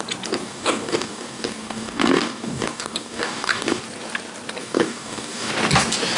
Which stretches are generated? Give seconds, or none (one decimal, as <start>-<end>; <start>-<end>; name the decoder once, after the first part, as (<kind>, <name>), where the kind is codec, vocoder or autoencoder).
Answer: 0.4-3.8 (codec, DAC); 4.6-5.5

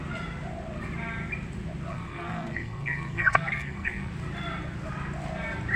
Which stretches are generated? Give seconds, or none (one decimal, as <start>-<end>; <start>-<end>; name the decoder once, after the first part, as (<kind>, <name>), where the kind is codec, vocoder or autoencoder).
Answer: 1.9-4.1 (codec, SNAC)

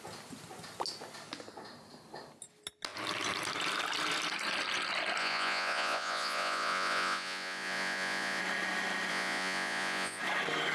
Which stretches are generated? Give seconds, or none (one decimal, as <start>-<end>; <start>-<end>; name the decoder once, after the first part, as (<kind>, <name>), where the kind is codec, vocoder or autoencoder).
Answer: 5.2-8.4 (vocoder, Vocos); 9.1-10.2